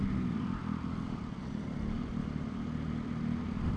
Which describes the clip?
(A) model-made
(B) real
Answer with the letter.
B